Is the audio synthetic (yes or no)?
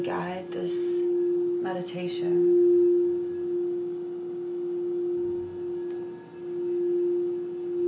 no